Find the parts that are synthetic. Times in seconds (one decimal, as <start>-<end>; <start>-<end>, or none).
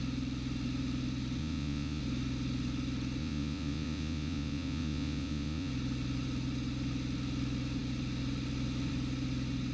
1.4-2.0; 3.2-5.7